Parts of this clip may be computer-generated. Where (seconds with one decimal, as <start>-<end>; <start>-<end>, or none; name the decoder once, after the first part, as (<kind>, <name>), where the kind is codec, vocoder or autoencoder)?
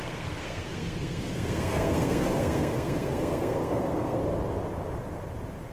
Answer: 0.0-4.2 (codec, SNAC)